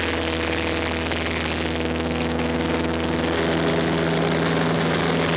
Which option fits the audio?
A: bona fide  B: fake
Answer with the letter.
A